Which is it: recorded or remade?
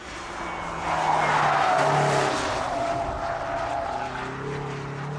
recorded